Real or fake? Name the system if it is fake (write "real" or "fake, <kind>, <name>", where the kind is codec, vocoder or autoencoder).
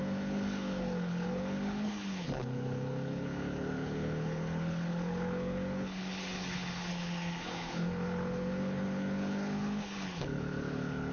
fake, codec, HILCodec